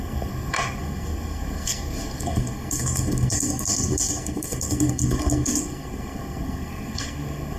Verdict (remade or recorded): remade